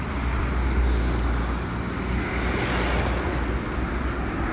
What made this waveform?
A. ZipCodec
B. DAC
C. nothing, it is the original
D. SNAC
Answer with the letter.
C